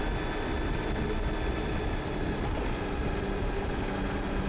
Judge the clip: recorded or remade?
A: recorded